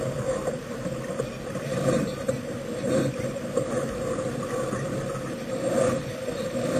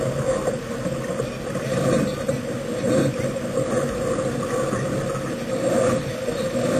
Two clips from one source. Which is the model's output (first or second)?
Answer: first